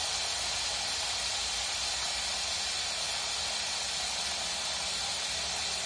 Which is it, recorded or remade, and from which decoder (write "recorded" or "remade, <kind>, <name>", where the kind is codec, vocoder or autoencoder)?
recorded